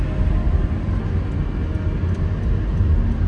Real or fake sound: real